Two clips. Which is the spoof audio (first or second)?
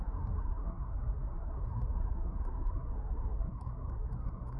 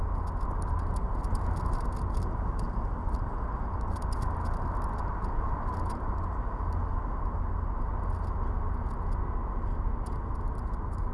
first